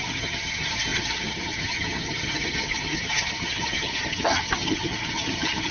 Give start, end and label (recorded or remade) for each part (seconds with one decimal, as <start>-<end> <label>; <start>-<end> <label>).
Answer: 0.0-5.7 remade